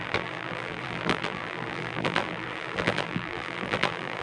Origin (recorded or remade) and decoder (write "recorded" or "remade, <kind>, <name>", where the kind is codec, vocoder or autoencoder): remade, vocoder, BigVGAN v2